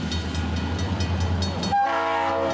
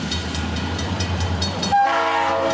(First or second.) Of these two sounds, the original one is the first